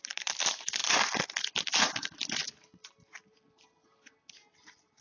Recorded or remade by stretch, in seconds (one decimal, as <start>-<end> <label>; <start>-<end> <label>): 0.0-0.8 recorded; 0.8-1.5 remade; 1.5-5.0 recorded